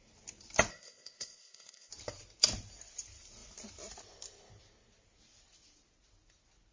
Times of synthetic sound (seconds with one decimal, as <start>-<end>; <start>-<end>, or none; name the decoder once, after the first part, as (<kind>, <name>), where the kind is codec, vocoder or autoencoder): 0.7-1.9 (codec, ZipCodec)